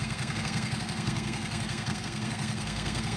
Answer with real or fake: fake